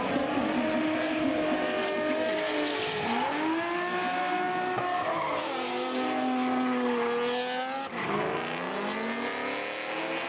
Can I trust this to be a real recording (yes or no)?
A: yes